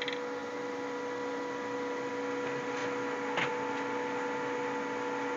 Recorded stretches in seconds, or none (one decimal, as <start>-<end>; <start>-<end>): 0.0-0.4; 2.1-5.4